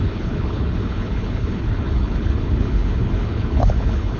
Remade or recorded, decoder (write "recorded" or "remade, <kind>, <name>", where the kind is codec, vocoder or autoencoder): remade, codec, HILCodec